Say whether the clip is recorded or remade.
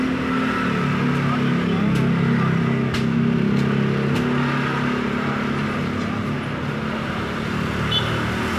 recorded